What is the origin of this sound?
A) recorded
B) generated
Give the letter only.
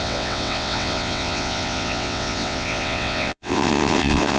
B